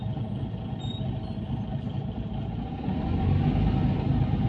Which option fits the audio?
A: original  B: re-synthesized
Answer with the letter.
A